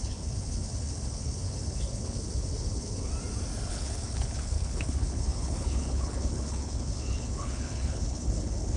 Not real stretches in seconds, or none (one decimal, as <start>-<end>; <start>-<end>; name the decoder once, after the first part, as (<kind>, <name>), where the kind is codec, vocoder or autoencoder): 0.0-3.1 (codec, HILCodec); 3.7-8.8